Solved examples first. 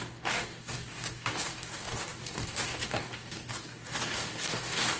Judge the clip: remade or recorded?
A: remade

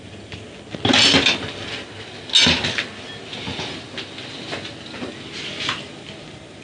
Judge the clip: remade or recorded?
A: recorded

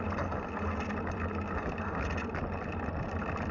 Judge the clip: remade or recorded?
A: recorded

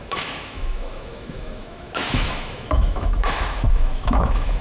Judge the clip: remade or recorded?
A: remade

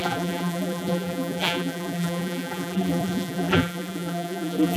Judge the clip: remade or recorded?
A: remade